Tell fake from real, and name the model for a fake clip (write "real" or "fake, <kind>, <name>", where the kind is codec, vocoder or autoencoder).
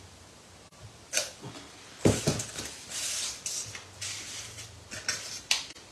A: real